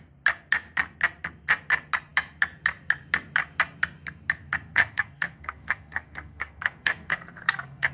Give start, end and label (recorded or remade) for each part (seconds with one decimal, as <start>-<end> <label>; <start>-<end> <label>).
0.0-4.7 recorded; 4.7-7.9 remade